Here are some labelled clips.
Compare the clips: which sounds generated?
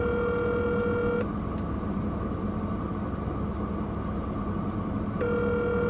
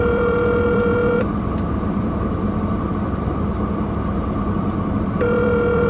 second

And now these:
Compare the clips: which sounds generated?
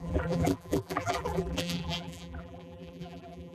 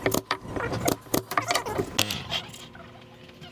first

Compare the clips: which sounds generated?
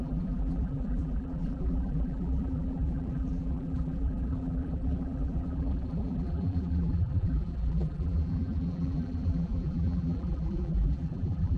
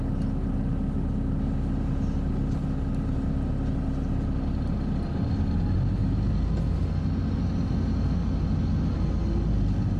first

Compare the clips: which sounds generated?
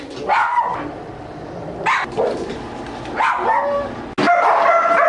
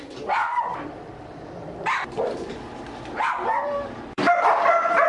second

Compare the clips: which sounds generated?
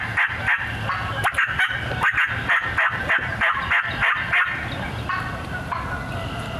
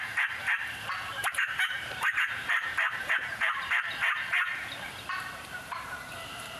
second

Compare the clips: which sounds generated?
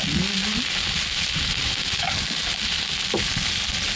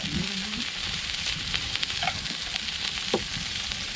second